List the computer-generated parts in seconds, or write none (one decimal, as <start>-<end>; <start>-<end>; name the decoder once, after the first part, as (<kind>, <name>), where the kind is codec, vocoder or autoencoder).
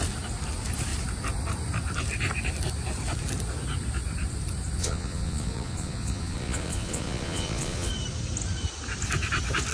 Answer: 4.8-7.9 (vocoder, Vocos)